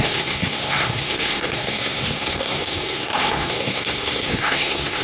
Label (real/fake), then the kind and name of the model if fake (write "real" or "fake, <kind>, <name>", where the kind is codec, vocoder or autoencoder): fake, codec, SNAC